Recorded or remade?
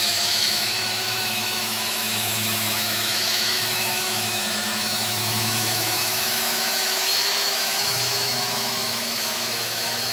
remade